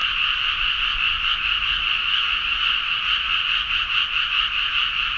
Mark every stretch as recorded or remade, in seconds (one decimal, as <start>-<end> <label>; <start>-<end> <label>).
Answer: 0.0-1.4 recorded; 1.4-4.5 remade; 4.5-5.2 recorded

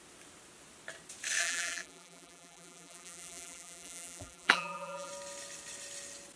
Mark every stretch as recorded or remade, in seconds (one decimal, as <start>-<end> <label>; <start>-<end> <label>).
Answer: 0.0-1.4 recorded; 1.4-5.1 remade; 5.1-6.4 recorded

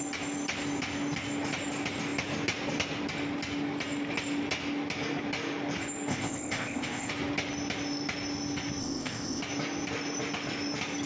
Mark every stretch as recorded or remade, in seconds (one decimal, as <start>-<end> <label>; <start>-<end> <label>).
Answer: 0.0-6.1 recorded; 6.1-7.1 remade; 7.1-8.8 recorded; 8.8-9.4 remade; 9.4-11.1 recorded